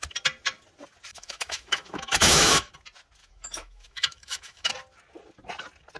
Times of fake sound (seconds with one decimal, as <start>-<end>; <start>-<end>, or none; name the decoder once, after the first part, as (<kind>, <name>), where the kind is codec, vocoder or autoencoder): 1.1-2.7 (autoencoder, DAC-VAE); 3.2-4.7